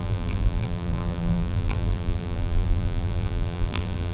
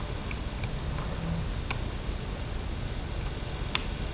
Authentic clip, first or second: second